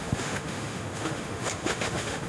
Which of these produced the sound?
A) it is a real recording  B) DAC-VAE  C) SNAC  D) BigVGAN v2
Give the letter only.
B